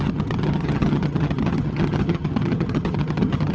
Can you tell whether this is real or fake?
fake